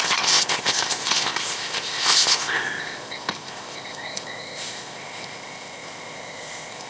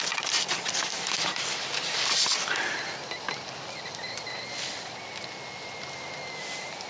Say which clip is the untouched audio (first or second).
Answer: second